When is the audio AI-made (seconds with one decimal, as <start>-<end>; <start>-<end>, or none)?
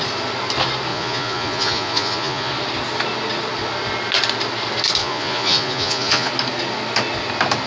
0.9-2.5; 5.0-6.3